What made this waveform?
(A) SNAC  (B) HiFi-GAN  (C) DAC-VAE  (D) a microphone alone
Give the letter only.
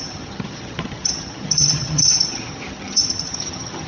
B